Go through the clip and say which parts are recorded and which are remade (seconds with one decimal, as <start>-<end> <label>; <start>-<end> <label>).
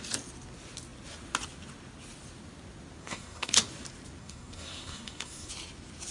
0.0-3.0 recorded; 3.0-3.5 remade; 3.5-4.2 recorded; 4.2-5.5 remade; 5.5-6.1 recorded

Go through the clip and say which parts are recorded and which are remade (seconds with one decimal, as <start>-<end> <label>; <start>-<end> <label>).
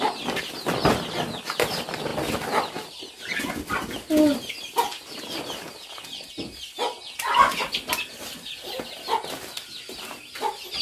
0.0-10.8 recorded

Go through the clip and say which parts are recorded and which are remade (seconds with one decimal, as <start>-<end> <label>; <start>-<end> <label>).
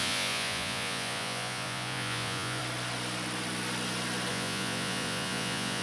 0.0-2.6 remade; 2.6-4.3 recorded; 4.3-5.8 remade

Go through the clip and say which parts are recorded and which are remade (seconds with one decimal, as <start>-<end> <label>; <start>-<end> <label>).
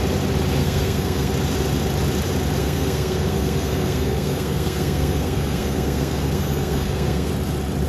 0.0-0.6 recorded; 0.6-1.3 remade; 1.3-2.6 recorded; 2.6-7.3 remade; 7.3-7.9 recorded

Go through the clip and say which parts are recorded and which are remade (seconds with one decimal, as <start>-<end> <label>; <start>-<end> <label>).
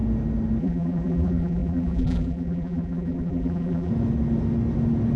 0.0-0.6 recorded; 0.6-3.9 remade; 3.9-5.2 recorded